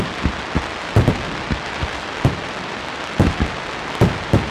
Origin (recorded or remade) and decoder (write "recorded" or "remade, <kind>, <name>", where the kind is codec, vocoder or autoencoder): recorded